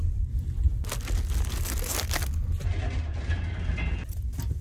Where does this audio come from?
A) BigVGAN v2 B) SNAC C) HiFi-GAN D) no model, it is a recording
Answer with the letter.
D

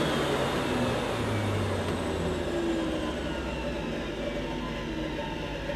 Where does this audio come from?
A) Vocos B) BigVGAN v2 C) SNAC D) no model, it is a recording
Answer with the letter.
D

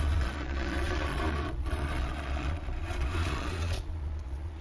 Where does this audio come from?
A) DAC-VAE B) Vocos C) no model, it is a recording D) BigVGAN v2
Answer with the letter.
B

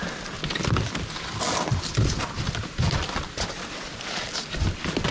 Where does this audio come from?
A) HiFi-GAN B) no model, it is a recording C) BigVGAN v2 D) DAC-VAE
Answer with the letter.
B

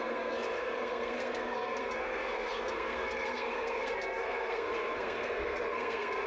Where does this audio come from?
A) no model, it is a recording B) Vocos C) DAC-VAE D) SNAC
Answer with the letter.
D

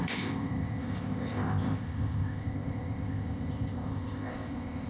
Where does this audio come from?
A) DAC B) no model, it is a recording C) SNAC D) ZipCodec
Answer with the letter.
D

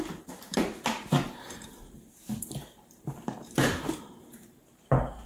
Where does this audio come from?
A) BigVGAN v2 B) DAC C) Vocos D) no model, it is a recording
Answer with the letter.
A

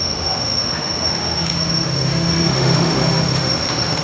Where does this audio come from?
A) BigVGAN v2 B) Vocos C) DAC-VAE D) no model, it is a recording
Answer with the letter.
C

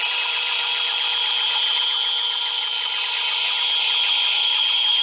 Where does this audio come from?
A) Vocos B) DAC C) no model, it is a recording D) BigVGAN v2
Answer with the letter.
C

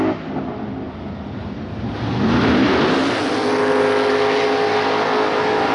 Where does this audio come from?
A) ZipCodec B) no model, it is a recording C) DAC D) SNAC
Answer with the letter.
B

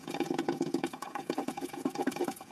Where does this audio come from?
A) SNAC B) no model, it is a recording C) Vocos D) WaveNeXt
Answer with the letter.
C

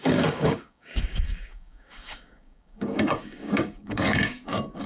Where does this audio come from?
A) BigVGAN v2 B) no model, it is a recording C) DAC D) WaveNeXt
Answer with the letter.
C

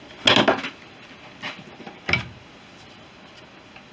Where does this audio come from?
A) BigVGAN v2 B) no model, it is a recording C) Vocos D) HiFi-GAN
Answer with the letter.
B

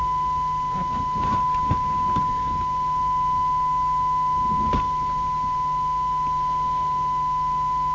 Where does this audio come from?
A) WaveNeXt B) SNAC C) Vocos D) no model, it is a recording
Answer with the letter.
D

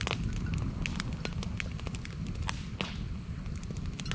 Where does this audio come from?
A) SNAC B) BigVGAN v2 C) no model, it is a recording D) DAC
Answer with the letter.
C